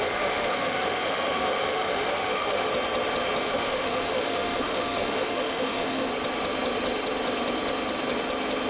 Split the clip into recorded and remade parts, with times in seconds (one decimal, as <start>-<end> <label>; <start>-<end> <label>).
0.0-2.7 remade; 2.7-3.4 recorded; 3.4-6.1 remade; 6.1-8.7 recorded